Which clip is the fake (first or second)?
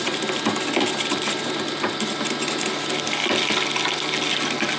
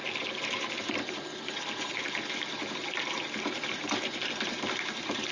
second